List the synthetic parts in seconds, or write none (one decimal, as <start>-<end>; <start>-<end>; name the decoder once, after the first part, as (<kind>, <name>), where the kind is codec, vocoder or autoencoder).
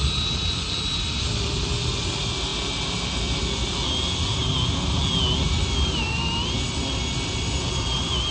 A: none